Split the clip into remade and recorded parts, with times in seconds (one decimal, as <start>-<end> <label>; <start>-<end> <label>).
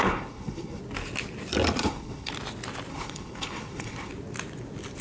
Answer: 0.0-0.8 remade; 0.8-1.8 recorded; 1.8-2.3 remade; 2.3-2.9 recorded; 2.9-4.1 remade; 4.1-5.0 recorded